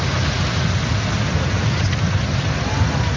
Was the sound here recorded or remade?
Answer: recorded